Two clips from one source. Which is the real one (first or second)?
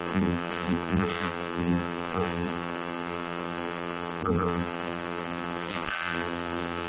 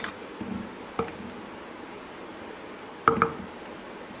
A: second